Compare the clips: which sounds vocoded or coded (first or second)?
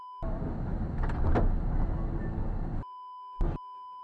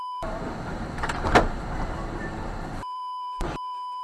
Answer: second